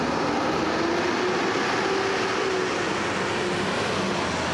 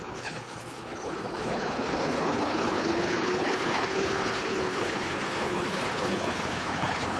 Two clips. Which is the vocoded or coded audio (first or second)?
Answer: second